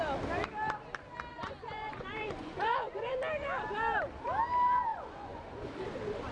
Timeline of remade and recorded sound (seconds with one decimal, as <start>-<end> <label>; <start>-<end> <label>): 0.0-1.3 recorded; 1.3-3.1 remade; 3.1-4.9 recorded; 4.9-5.6 remade; 5.6-6.3 recorded